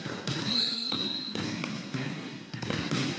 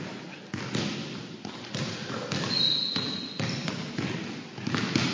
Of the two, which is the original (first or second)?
second